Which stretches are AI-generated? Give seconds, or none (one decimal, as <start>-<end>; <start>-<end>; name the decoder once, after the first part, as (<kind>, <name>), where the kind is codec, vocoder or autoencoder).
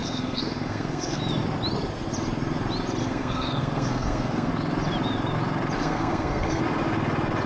0.0-1.2 (codec, SNAC); 3.0-4.5; 5.8-6.6